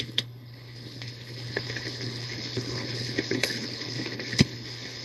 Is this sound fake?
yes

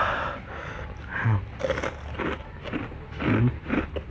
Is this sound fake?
no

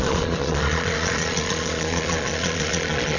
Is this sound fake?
yes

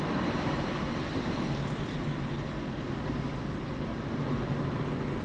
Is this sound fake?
no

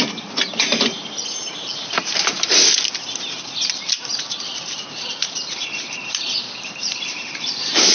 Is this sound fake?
yes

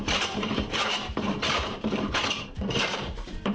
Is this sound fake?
yes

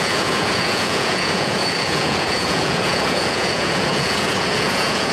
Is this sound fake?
yes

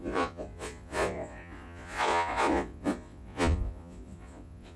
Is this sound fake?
yes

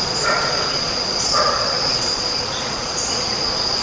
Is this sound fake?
yes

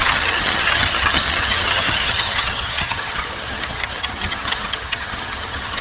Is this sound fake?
yes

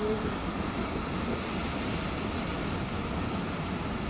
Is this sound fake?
no